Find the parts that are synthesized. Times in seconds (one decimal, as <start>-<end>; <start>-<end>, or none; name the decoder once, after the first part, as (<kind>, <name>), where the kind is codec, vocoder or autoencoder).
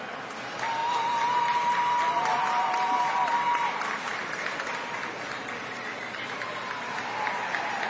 none